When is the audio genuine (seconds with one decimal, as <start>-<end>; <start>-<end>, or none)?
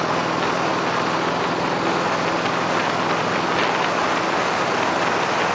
0.0-5.5